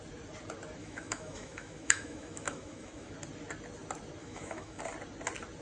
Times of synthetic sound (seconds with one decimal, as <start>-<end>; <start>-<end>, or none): 0.8-3.1; 4.2-4.8